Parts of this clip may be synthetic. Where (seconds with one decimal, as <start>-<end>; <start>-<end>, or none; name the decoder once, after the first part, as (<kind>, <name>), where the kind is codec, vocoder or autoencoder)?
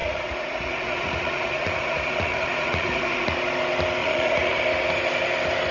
0.0-3.4 (vocoder, Vocos); 4.0-4.6